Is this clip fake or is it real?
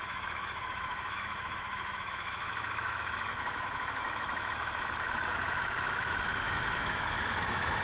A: fake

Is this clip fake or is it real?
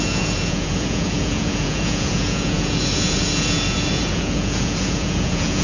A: fake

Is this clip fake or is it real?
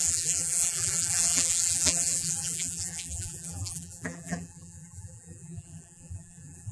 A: fake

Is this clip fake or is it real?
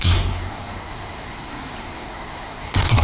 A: fake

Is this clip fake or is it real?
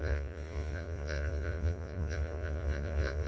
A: fake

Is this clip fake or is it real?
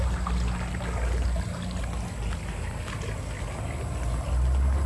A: real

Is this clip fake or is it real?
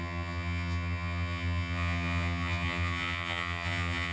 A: fake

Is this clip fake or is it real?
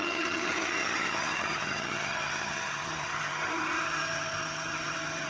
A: fake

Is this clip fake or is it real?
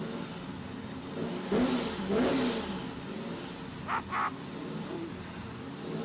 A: real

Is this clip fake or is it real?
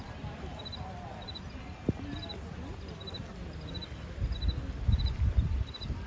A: real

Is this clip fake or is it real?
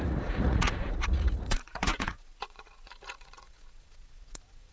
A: fake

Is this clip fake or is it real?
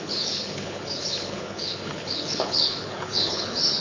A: fake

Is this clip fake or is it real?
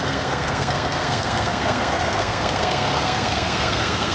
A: fake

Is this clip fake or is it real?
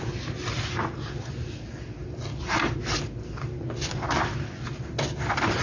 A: real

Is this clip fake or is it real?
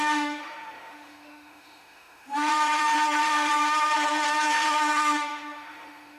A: fake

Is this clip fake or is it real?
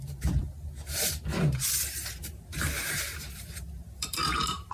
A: fake